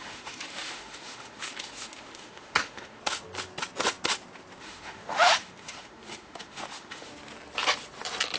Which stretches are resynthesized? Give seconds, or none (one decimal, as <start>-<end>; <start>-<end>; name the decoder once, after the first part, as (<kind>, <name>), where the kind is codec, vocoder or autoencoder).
0.0-3.0 (autoencoder, DAC-VAE); 4.6-7.1